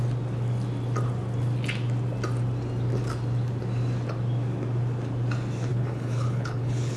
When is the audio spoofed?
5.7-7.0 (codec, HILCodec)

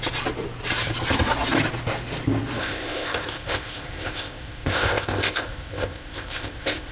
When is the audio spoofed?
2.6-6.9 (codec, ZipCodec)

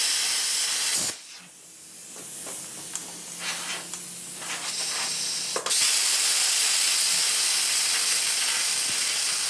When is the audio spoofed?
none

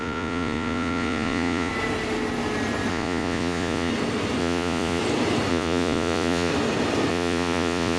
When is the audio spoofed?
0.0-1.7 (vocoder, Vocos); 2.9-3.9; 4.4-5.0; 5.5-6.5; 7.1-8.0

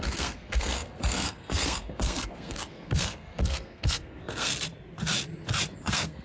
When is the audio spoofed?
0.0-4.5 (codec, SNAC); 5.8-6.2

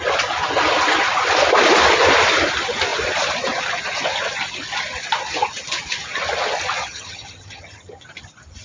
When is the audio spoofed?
6.8-8.0 (vocoder, HiFi-GAN)

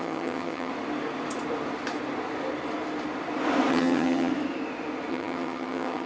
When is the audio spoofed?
0.0-0.7 (vocoder, HiFi-GAN); 3.7-4.3; 5.1-6.1

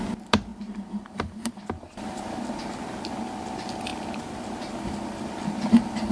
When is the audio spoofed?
0.5-1.5 (vocoder, BigVGAN v2)